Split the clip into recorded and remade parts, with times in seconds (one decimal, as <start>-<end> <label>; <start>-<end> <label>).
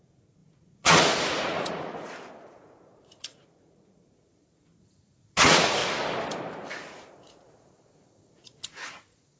0.0-1.9 remade; 1.9-2.5 recorded; 2.5-5.8 remade; 5.8-6.7 recorded; 6.7-9.4 remade